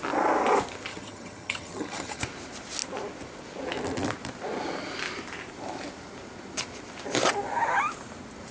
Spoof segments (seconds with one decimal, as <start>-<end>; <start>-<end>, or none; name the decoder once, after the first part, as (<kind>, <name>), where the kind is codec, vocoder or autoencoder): 0.9-2.2 (vocoder, HiFi-GAN)